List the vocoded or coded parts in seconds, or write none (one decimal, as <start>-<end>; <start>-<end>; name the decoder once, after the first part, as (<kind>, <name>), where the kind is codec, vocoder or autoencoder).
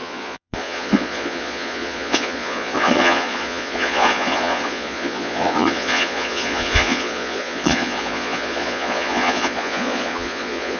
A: 0.0-10.8 (vocoder, Vocos)